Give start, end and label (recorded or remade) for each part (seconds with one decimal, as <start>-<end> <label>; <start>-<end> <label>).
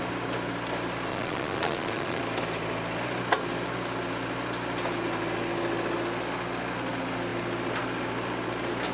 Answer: 0.0-1.1 recorded; 1.1-2.2 remade; 2.2-8.9 recorded